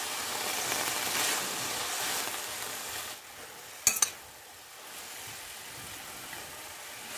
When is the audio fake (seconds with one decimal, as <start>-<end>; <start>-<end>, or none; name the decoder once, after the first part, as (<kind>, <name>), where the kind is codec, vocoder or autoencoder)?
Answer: 6.4-7.2 (vocoder, BigVGAN v2)

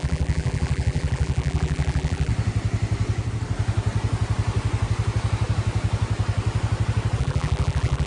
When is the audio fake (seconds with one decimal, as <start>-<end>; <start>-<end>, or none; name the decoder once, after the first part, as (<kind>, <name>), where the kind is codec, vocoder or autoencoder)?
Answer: 0.0-2.3 (vocoder, BigVGAN v2); 7.2-8.1

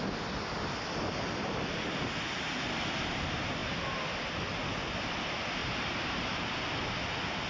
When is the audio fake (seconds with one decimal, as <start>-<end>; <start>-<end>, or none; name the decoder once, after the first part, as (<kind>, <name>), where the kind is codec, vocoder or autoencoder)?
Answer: 5.6-6.4 (vocoder, BigVGAN v2)